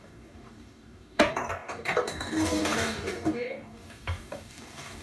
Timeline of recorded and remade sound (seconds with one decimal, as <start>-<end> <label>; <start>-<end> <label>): 0.0-5.0 remade